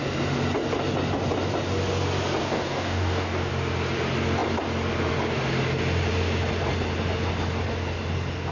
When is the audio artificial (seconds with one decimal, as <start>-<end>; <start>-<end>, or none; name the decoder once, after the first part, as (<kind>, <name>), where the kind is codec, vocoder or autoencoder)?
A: 2.4-3.5 (codec, DAC)